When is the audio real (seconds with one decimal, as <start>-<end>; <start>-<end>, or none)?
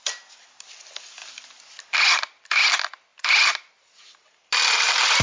0.0-5.2